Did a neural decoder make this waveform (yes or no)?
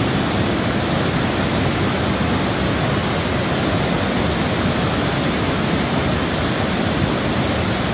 no